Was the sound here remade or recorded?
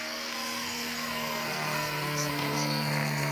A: remade